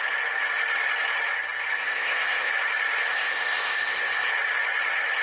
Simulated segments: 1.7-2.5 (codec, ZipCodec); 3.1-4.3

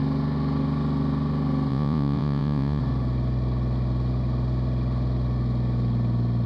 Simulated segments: 1.7-2.8 (vocoder, Vocos)

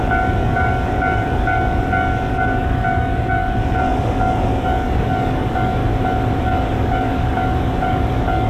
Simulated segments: 0.0-5.8 (codec, DAC); 6.4-8.5

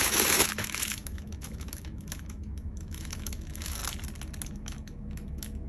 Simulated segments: 0.0-3.8 (autoencoder, DAC-VAE); 4.5-5.7

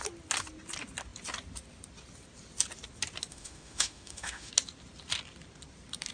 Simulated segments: 3.3-4.5 (autoencoder, DAC-VAE)

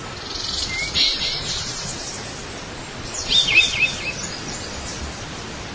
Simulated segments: none